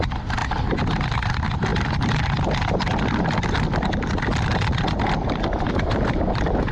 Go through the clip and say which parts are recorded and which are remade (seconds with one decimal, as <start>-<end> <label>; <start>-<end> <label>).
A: 0.0-6.7 recorded